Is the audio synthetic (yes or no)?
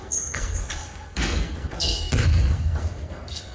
yes